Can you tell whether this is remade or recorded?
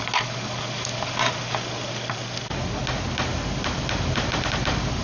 recorded